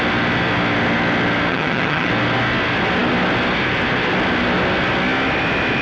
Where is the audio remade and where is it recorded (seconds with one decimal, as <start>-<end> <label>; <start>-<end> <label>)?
0.0-1.5 recorded; 1.5-2.1 remade; 2.1-5.8 recorded